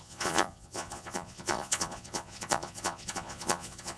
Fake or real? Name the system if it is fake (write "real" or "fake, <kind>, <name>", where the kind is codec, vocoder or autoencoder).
fake, vocoder, Vocos